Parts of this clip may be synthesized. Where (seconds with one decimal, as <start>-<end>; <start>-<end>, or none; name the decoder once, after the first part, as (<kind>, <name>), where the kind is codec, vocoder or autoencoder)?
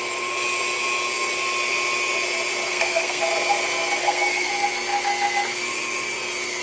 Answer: 2.7-3.2 (codec, SNAC); 4.0-4.5